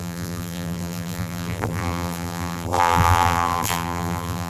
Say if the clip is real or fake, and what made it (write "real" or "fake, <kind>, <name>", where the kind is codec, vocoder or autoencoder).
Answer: fake, vocoder, BigVGAN v2